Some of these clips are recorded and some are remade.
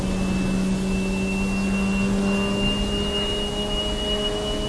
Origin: recorded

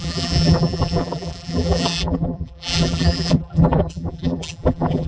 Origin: remade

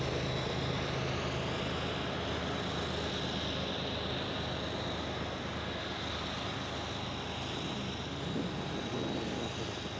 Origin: recorded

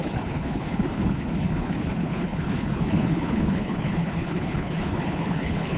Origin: remade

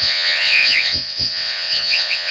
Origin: remade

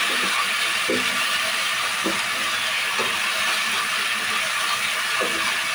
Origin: recorded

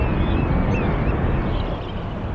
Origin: recorded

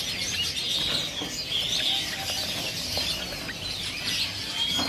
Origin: recorded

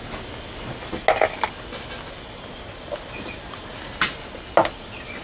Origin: recorded